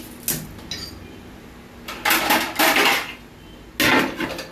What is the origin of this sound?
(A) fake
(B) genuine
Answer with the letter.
B